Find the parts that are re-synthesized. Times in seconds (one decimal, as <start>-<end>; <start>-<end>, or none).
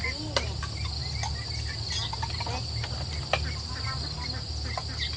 none